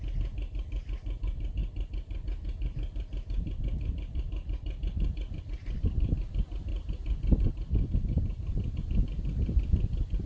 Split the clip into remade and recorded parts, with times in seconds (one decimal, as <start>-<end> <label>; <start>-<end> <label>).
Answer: 0.0-10.3 recorded